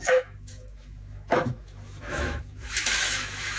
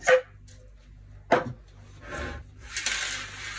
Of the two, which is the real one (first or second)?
second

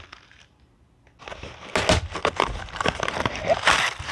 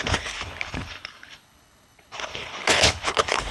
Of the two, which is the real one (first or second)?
first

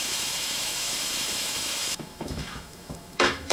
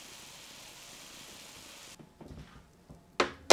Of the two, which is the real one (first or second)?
second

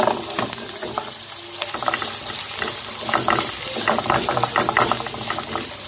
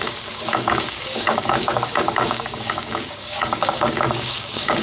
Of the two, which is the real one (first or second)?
first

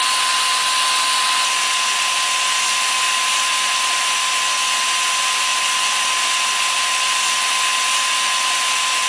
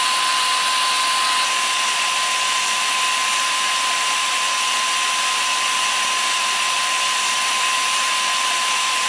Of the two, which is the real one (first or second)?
first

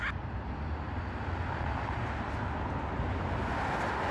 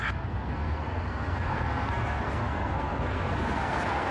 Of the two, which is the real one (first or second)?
first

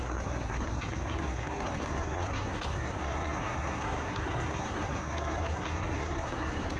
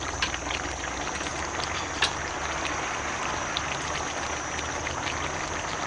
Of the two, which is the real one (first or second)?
second